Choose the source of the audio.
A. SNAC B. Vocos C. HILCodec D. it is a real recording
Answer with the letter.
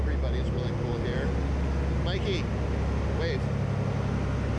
D